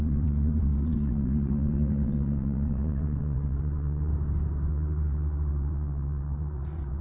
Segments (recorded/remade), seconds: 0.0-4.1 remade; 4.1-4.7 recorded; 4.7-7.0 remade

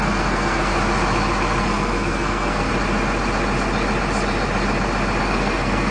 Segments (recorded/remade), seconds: 0.0-0.7 remade; 0.7-1.6 recorded; 1.6-2.7 remade; 2.7-5.2 recorded; 5.2-5.9 remade

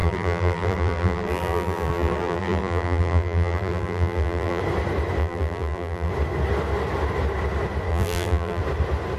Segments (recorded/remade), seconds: 0.0-4.6 remade; 4.6-5.2 recorded; 5.2-6.1 remade; 6.1-7.9 recorded; 7.9-8.6 remade; 8.6-9.2 recorded

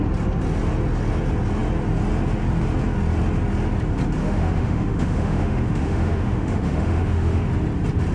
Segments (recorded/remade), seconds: 0.0-4.2 recorded; 4.2-7.5 remade; 7.5-8.1 recorded

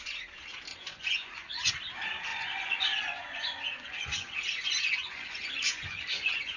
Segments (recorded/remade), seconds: 0.0-0.7 recorded; 0.7-1.7 remade; 1.7-2.3 recorded; 2.3-6.6 remade